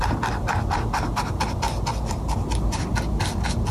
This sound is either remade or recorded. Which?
recorded